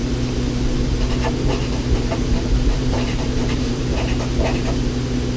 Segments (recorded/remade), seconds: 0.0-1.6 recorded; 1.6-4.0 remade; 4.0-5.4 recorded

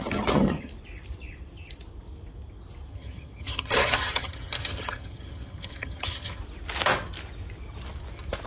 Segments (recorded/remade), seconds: 0.0-0.7 remade; 0.7-2.9 recorded; 2.9-6.4 remade; 6.4-8.5 recorded